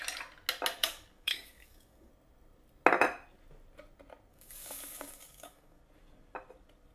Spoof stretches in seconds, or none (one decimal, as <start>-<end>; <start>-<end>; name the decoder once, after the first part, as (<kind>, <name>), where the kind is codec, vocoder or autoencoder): 0.8-2.1 (codec, DAC); 4.3-5.8